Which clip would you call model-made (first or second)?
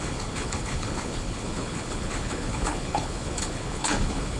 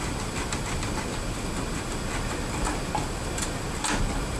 first